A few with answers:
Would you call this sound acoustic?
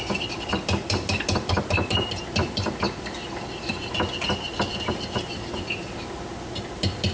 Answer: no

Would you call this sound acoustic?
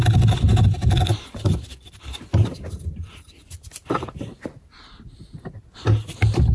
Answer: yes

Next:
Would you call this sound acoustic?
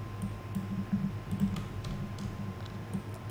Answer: yes